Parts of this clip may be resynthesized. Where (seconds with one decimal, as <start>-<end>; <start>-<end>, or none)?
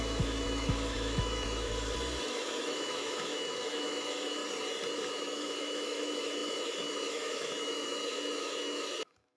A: 0.0-1.7; 2.2-4.4; 5.1-9.4